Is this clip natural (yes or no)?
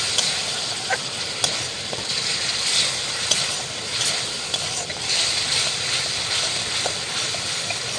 yes